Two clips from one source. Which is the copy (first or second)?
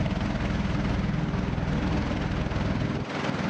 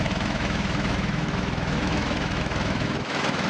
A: second